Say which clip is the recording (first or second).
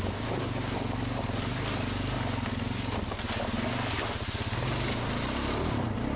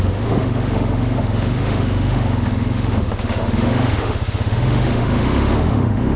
first